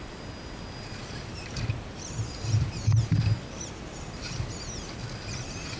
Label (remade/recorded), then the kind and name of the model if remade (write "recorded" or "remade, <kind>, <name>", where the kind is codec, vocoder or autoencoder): recorded